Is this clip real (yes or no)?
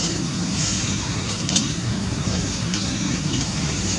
no